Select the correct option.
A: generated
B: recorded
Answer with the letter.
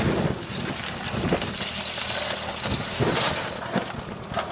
B